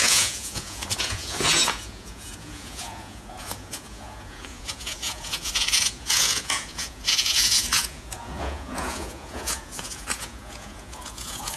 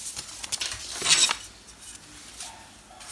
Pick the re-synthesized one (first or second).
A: first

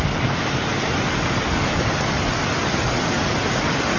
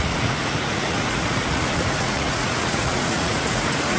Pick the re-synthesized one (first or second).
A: second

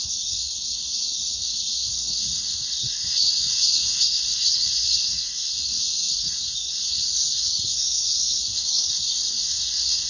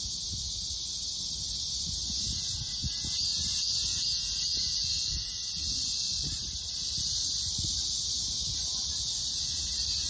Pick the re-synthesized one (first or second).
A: first